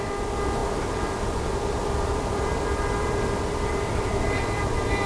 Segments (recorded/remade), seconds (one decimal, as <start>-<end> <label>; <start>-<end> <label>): 0.0-5.1 remade